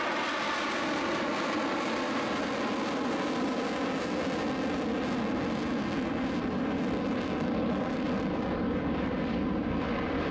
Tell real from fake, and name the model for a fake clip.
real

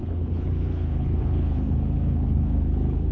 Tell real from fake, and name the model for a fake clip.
fake, codec, HILCodec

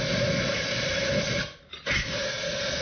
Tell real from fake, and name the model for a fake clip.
real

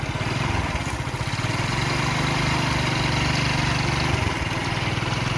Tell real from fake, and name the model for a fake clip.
real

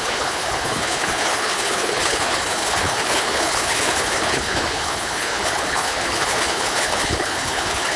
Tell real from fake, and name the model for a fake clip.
fake, codec, HILCodec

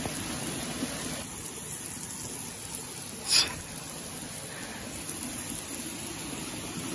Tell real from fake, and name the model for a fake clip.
real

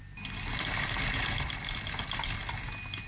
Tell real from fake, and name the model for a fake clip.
real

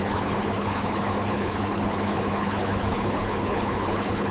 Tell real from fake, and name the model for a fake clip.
fake, codec, HILCodec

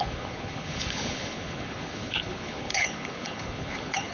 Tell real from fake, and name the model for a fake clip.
fake, codec, HILCodec